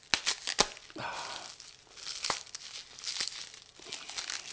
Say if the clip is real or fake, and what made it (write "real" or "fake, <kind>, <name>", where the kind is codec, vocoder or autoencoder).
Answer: real